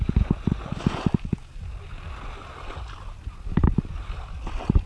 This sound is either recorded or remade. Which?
recorded